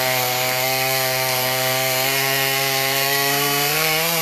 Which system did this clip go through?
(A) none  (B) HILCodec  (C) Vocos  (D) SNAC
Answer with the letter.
D